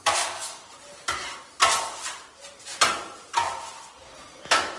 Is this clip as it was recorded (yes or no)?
yes